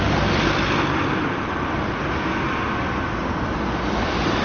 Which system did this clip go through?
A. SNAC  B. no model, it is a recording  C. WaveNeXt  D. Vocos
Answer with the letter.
B